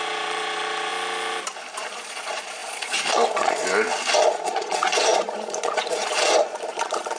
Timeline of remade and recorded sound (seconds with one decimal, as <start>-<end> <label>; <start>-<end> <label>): 0.0-0.9 remade; 0.9-1.8 recorded; 1.8-3.6 remade; 3.6-4.3 recorded; 4.3-7.2 remade

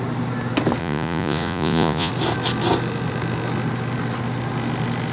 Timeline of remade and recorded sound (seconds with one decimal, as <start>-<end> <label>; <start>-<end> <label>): 0.0-0.8 recorded; 0.8-2.1 remade; 2.1-5.1 recorded

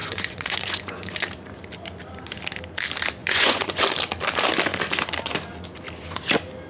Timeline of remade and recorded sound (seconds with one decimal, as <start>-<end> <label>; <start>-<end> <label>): 0.0-1.2 remade; 1.2-3.2 recorded; 3.2-3.8 remade; 3.8-6.7 recorded

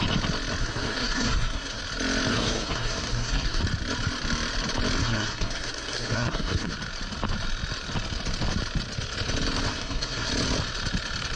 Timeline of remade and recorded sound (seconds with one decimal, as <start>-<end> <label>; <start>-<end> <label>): 0.0-0.6 recorded; 0.6-1.8 remade; 1.8-2.3 recorded; 2.3-3.6 remade; 3.6-5.0 recorded; 5.0-6.7 remade; 6.7-9.7 recorded; 9.7-10.3 remade; 10.3-11.4 recorded

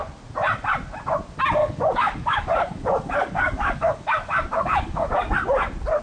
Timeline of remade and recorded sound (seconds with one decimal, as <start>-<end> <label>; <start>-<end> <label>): 0.0-1.6 recorded; 1.6-5.2 remade; 5.2-6.0 recorded

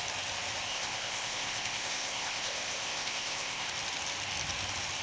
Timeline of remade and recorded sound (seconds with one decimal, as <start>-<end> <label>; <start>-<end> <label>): 0.0-0.7 recorded; 0.7-3.7 remade; 3.7-5.0 recorded

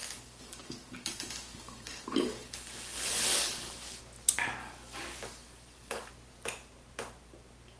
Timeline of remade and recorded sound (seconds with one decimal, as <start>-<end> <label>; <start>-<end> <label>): 0.0-4.0 remade; 4.0-4.6 recorded; 4.6-6.1 remade; 6.1-7.8 recorded

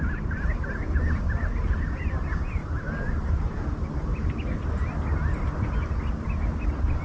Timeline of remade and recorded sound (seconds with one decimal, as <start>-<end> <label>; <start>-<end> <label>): 0.0-7.0 recorded